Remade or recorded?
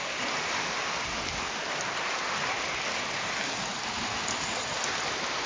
recorded